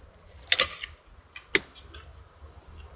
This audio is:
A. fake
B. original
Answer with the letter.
B